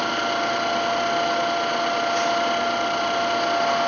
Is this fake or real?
real